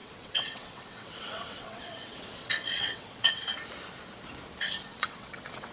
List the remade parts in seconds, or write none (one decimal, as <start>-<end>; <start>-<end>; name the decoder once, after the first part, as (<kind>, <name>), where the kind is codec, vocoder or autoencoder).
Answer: 0.0-3.3 (vocoder, WaveNeXt); 4.9-5.7